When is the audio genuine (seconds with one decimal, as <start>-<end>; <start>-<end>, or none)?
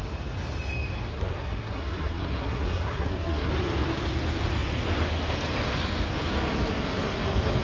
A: 0.0-1.1; 3.5-7.6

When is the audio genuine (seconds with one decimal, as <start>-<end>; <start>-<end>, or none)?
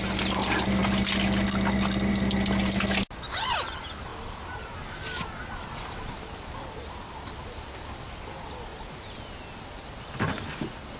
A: 0.0-11.0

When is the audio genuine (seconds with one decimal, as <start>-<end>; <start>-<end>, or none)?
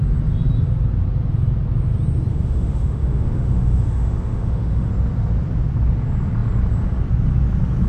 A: 0.0-2.3; 4.9-7.9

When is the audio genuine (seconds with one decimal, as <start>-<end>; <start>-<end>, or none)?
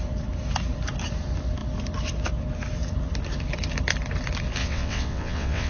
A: 0.0-4.6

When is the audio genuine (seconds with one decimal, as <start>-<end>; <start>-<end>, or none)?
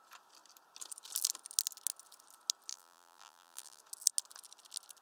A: 0.0-2.7; 3.8-5.0